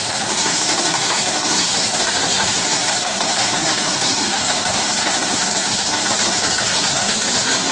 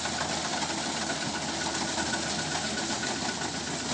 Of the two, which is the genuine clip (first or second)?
second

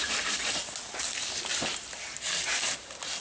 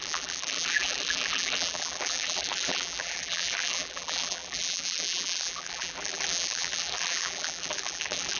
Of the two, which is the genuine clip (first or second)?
first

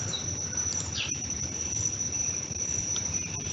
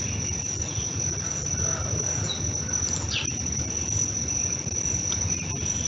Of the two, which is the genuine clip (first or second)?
second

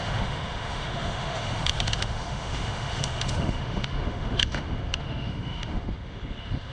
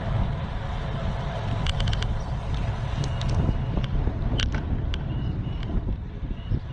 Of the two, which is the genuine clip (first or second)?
second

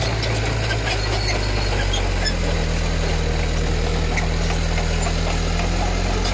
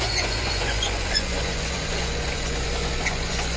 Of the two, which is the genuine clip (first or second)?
first